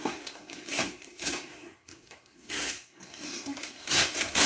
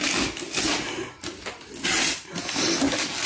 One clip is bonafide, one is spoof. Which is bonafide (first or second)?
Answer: second